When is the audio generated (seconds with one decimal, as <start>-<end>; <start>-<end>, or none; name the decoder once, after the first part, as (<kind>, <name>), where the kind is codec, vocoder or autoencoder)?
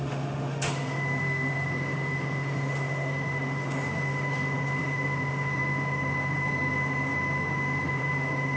0.0-8.6 (autoencoder, DAC-VAE)